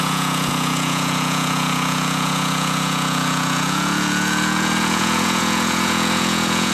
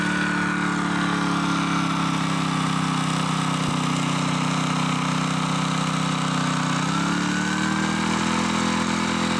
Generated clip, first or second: first